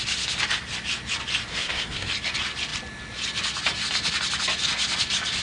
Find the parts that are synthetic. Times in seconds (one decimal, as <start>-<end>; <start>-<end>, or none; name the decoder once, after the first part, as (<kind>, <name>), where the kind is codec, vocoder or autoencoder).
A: 1.5-2.1 (codec, SNAC)